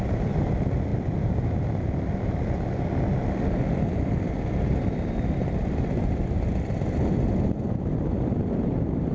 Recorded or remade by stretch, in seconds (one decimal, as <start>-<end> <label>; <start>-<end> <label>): 0.0-0.9 recorded; 0.9-1.5 remade; 1.5-9.1 recorded